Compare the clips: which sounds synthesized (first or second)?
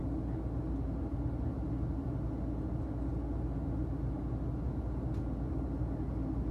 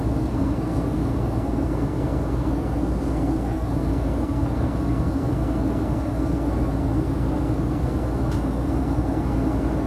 second